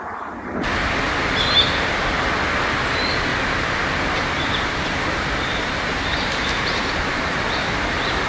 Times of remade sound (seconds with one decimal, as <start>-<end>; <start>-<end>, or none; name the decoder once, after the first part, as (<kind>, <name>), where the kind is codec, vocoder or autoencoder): 3.3-8.3 (vocoder, BigVGAN v2)